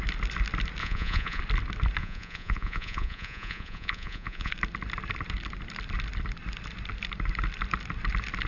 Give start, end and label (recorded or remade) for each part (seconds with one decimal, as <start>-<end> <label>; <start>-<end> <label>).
0.0-0.8 recorded; 0.8-1.4 remade; 1.4-2.0 recorded; 2.0-4.5 remade; 4.5-8.5 recorded